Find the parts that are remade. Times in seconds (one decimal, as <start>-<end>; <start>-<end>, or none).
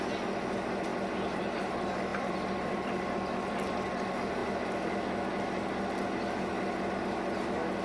0.9-1.6; 2.1-3.7